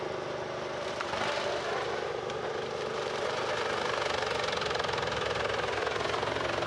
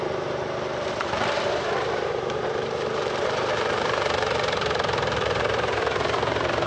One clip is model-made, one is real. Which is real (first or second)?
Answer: first